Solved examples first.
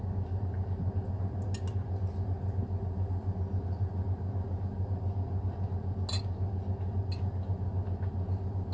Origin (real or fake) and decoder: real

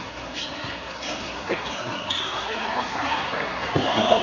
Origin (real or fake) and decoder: fake, codec, SNAC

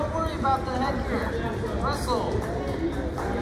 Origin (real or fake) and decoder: real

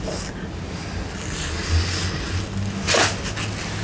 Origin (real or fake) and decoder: real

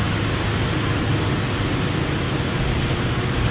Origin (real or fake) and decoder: real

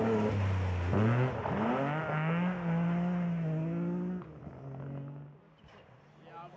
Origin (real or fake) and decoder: real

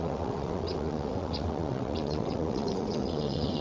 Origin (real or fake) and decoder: fake, vocoder, WaveNeXt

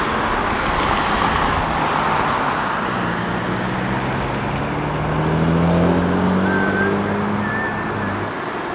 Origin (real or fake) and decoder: real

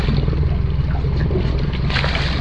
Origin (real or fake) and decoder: real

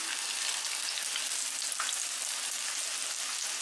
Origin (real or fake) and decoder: real